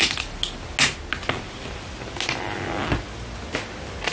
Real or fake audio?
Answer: real